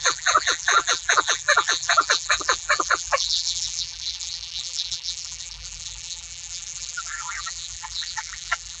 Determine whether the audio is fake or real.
fake